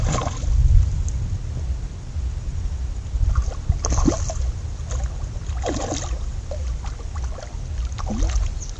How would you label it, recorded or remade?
recorded